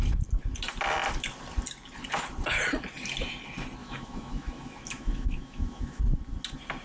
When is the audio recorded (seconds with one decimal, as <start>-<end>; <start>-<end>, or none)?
0.0-3.8; 6.0-6.8